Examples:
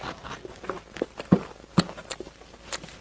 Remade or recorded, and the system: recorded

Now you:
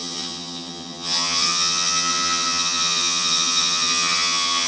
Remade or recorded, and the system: remade, vocoder, HiFi-GAN